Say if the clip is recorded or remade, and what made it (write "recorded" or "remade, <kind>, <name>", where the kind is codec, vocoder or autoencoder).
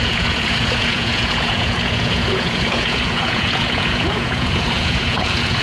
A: remade, vocoder, Vocos